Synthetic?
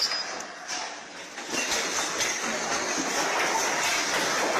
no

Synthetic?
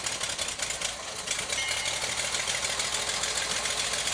no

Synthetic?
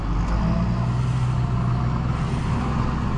no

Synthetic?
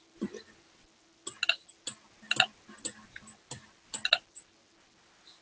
no